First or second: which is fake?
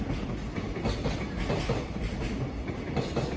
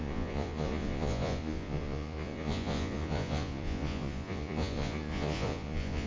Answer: second